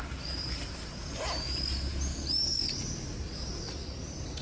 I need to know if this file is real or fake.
real